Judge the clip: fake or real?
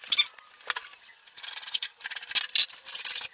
real